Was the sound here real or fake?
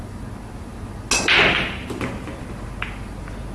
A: real